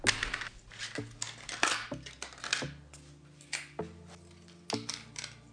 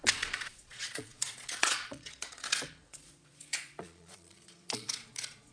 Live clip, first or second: first